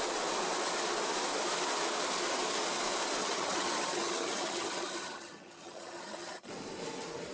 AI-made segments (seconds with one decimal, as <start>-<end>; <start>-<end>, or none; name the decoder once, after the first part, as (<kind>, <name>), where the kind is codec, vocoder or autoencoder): 3.2-6.5 (vocoder, HiFi-GAN)